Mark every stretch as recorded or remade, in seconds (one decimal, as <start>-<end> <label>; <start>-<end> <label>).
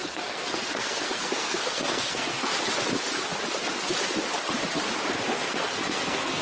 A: 0.0-2.5 remade; 2.5-5.3 recorded; 5.3-6.4 remade